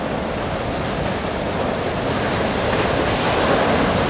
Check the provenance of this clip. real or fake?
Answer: real